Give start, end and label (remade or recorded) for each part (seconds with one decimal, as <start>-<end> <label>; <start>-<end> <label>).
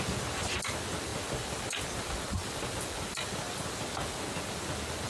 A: 0.0-5.1 recorded